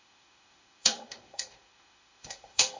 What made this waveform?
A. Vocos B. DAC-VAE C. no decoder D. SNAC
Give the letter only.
B